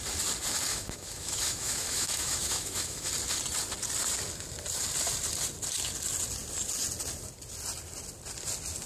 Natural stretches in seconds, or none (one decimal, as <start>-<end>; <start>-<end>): 0.0-0.7; 3.1-8.9